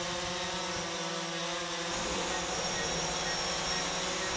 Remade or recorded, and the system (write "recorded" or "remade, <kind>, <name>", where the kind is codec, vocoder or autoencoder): recorded